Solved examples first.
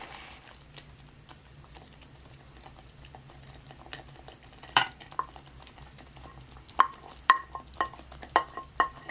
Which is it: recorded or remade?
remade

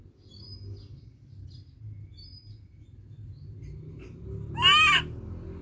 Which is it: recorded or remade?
recorded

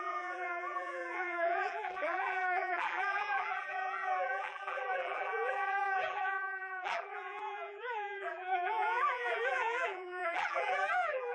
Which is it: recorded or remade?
remade